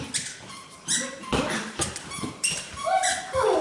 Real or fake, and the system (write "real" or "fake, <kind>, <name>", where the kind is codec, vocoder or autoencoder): real